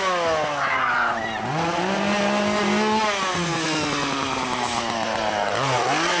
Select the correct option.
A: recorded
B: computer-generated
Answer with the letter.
A